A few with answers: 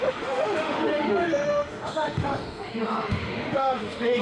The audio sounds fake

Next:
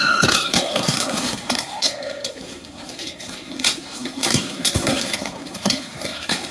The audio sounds fake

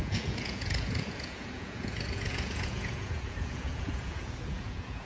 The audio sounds fake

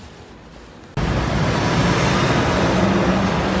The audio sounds real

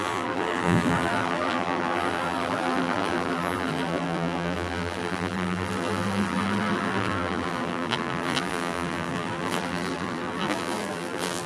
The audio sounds fake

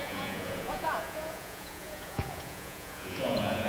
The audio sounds fake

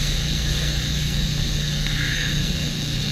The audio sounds fake